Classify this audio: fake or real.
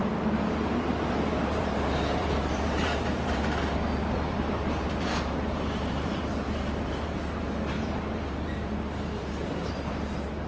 fake